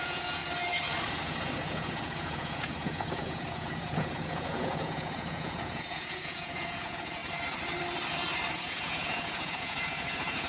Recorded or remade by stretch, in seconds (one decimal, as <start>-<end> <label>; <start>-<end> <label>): 0.0-0.4 remade; 0.4-1.1 recorded; 1.1-7.2 remade; 7.2-8.5 recorded; 8.5-10.5 remade